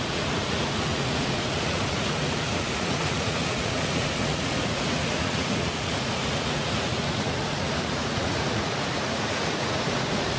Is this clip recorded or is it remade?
remade